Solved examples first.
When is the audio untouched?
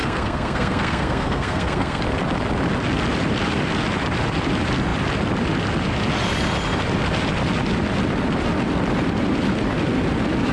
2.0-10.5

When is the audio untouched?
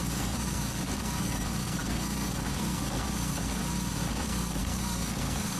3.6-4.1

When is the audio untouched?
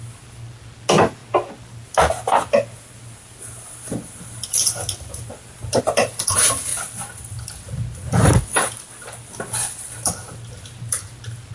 0.0-11.5